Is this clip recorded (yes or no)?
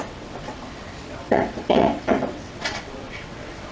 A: no